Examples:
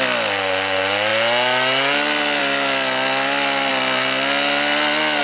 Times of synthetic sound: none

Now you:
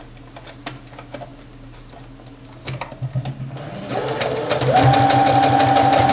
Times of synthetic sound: none

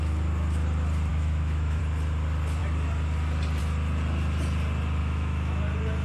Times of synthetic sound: 1.1-1.8; 5.0-5.6

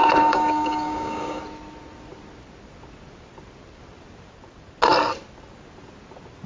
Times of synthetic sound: 0.0-1.4

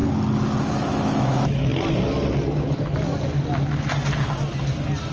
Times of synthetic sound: 0.6-1.7

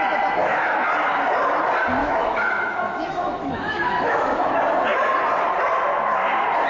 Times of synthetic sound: 0.4-0.9; 2.0-4.5